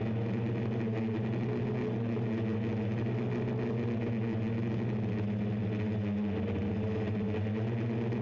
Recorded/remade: recorded